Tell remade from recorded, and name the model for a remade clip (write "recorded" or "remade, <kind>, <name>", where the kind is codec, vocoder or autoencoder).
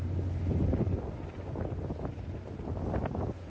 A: recorded